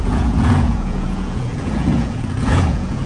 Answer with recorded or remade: remade